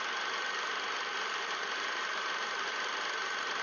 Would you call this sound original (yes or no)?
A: yes